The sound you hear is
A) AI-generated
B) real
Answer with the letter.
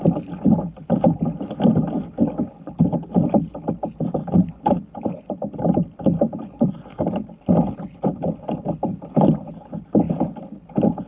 B